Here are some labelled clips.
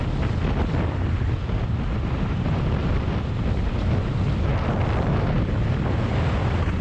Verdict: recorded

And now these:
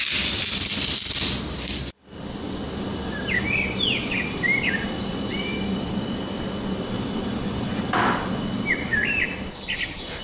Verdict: recorded